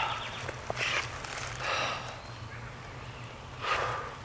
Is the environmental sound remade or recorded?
recorded